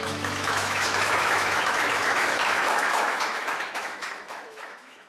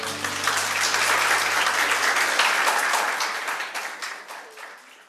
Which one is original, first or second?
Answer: second